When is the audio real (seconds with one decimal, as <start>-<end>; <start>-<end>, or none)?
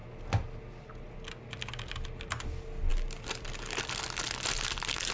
0.0-5.1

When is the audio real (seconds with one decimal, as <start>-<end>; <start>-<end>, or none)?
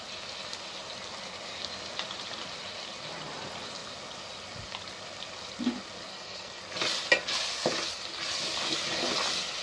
0.0-6.1; 6.6-9.6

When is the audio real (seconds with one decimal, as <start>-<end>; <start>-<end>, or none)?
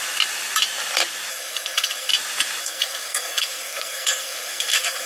0.0-1.3; 2.1-2.6